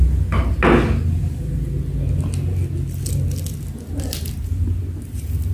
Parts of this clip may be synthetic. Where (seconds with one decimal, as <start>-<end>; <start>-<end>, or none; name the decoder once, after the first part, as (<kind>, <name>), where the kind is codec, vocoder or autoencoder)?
none